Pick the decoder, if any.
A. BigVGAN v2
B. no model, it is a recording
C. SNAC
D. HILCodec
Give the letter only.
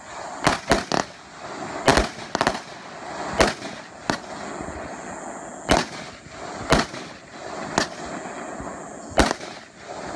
B